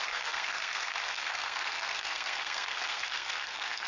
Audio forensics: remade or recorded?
remade